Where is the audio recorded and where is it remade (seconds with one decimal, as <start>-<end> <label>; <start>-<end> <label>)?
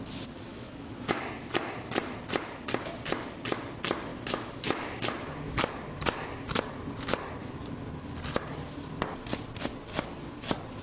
0.0-0.5 recorded; 0.5-1.2 remade; 1.2-4.1 recorded; 4.1-5.0 remade; 5.0-10.8 recorded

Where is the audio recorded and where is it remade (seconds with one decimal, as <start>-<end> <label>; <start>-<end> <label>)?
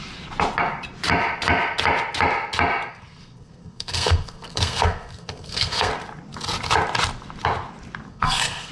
0.0-2.9 recorded; 2.9-5.9 remade; 5.9-8.1 recorded; 8.1-8.7 remade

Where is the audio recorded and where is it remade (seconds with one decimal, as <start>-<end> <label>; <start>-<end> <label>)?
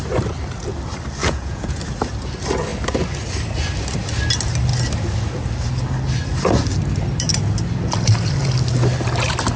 0.0-1.2 recorded; 1.2-1.8 remade; 1.8-9.6 recorded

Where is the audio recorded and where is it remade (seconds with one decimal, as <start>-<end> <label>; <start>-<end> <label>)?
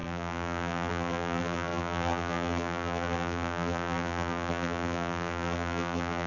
0.0-6.3 remade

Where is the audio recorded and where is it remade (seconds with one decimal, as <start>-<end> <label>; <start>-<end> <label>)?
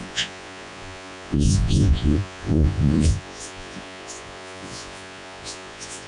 0.0-6.1 remade